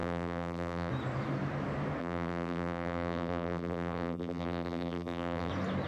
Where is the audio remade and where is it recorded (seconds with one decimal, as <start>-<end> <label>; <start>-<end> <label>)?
0.0-0.9 remade; 0.9-2.0 recorded; 2.0-5.5 remade; 5.5-5.9 recorded